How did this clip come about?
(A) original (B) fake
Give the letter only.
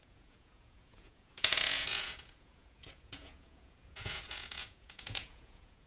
B